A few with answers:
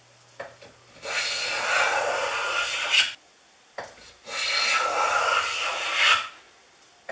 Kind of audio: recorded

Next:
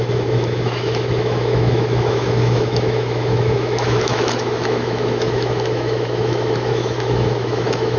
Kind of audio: remade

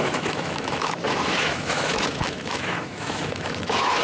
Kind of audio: remade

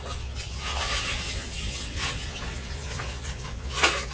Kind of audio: remade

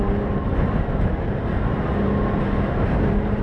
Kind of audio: recorded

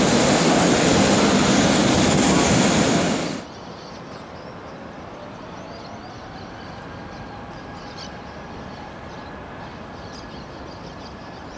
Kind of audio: recorded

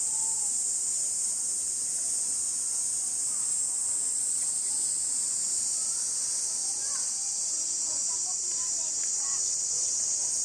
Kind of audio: recorded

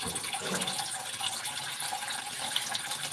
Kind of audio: recorded